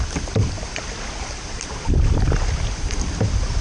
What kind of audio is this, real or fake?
real